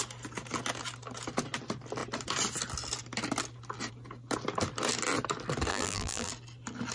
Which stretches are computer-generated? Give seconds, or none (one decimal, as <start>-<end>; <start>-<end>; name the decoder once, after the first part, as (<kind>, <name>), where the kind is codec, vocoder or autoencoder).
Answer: 5.7-6.3 (vocoder, BigVGAN v2)